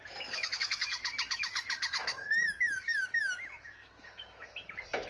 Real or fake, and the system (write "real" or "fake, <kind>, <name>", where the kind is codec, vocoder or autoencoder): fake, autoencoder, DAC-VAE